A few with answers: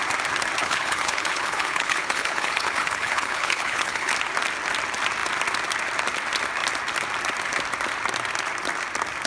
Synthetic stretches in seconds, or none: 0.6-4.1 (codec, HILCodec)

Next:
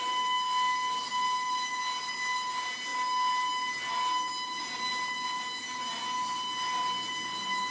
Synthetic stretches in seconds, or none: none

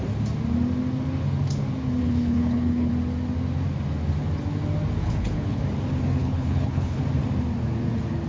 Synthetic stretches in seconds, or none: 2.0-2.9 (codec, HILCodec); 5.0-5.6; 6.2-7.0

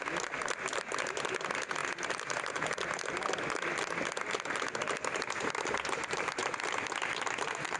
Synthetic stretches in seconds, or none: none

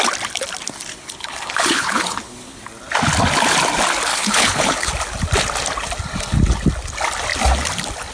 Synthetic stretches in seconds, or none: 0.9-2.6 (codec, HILCodec); 4.1-4.9